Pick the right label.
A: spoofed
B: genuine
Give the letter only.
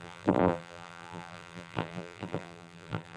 A